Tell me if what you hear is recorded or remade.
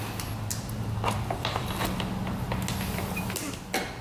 recorded